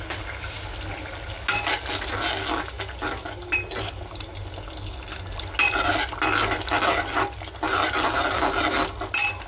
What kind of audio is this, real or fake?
real